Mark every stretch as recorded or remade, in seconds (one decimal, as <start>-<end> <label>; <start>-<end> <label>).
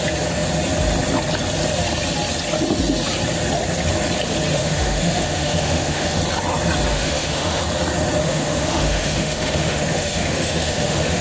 0.0-4.5 recorded; 4.5-6.2 remade; 6.2-6.9 recorded; 6.9-7.6 remade; 7.6-8.2 recorded; 8.2-11.2 remade